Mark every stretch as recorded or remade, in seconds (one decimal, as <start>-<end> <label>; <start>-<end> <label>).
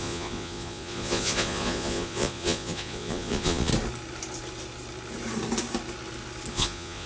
0.0-3.7 remade; 3.7-6.5 recorded; 6.5-7.1 remade